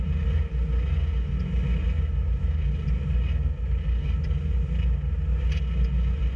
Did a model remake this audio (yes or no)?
no